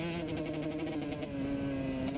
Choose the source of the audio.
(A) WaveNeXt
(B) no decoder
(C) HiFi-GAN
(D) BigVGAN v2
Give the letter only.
B